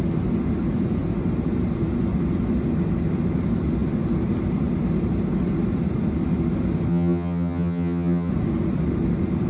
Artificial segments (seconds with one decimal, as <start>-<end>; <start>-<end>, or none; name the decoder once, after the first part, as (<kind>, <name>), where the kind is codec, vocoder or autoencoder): 6.9-8.3 (vocoder, HiFi-GAN)